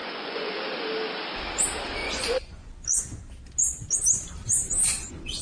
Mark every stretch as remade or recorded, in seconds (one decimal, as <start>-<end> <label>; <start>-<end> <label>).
0.0-0.6 remade; 0.6-2.0 recorded; 2.0-3.0 remade; 3.0-4.4 recorded; 4.4-5.4 remade